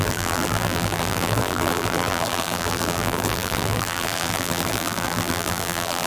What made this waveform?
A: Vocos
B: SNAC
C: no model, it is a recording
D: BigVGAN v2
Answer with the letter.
D